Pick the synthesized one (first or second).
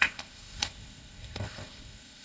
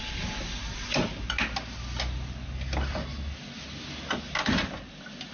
first